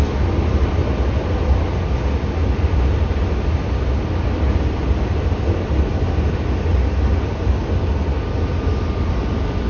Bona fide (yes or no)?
yes